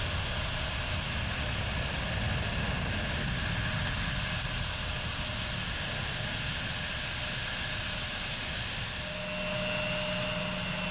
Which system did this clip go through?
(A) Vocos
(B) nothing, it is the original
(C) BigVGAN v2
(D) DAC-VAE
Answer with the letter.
B